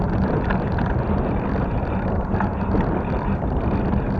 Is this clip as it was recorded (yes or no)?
yes